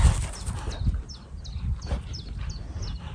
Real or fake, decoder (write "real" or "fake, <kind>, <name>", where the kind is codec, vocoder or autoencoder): real